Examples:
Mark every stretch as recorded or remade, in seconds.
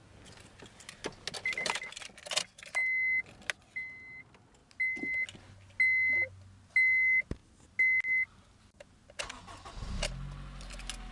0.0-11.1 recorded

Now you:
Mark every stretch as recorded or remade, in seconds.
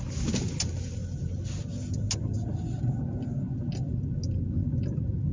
0.0-5.3 recorded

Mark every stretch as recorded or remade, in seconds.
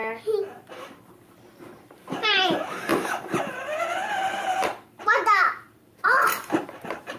0.0-7.2 remade